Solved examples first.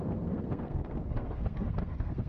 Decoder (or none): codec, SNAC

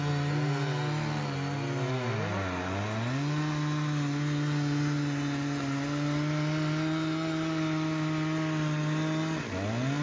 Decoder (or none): none